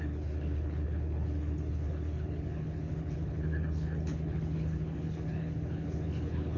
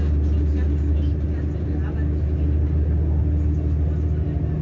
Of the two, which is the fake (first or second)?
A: first